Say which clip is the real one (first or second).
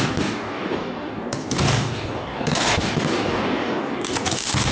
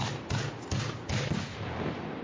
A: second